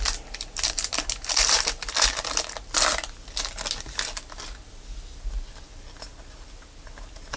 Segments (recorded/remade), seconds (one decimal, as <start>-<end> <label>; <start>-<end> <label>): 0.0-7.4 recorded